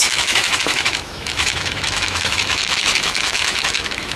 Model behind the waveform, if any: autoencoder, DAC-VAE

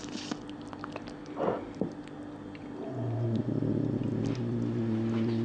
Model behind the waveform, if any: none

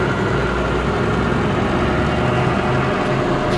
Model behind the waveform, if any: none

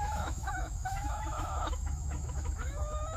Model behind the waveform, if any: autoencoder, DAC-VAE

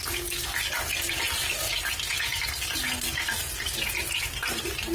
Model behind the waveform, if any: none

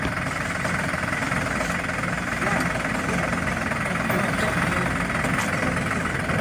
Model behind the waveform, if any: none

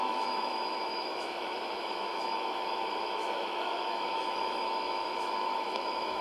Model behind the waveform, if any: autoencoder, DAC-VAE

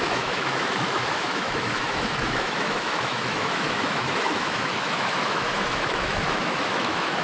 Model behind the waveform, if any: autoencoder, DAC-VAE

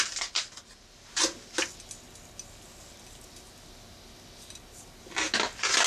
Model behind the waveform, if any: none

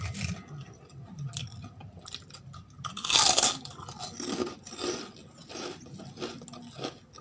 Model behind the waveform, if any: none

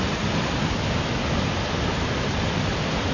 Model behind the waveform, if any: none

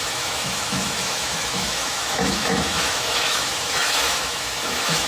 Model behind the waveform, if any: autoencoder, DAC-VAE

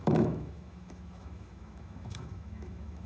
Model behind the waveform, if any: autoencoder, DAC-VAE